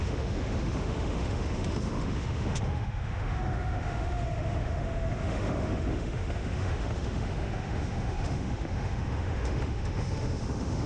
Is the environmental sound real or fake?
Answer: fake